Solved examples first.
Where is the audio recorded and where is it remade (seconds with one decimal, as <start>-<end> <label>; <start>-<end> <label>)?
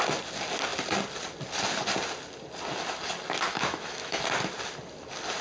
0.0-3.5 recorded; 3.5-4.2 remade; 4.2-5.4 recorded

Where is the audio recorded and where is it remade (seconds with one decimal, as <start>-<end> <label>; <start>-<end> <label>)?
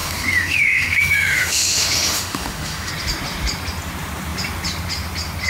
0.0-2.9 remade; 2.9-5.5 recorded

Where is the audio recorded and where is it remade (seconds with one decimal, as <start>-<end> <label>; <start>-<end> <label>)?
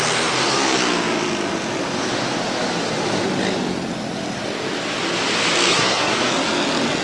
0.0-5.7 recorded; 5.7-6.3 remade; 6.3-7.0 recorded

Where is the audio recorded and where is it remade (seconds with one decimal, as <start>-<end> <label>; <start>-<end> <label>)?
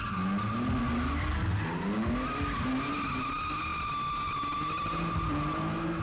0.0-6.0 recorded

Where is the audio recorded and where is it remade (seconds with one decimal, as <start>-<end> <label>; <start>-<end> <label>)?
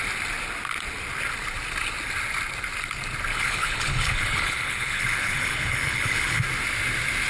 0.0-3.3 recorded; 3.3-6.4 remade; 6.4-7.3 recorded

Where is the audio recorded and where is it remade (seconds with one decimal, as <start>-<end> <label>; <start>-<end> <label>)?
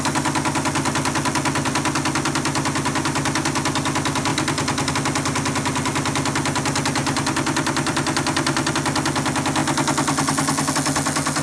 0.0-4.3 recorded; 4.3-4.9 remade; 4.9-7.0 recorded; 7.0-8.7 remade; 8.7-11.4 recorded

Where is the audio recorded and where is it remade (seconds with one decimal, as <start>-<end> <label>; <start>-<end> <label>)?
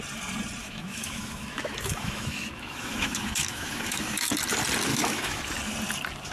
0.0-0.6 recorded; 0.6-4.3 remade; 4.3-4.9 recorded; 4.9-5.4 remade; 5.4-6.3 recorded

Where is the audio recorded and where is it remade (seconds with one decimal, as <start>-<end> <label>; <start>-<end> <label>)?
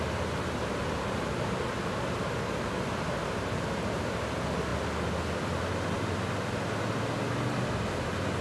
0.0-8.4 recorded